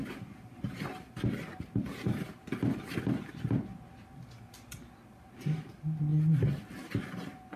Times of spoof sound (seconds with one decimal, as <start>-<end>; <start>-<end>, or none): none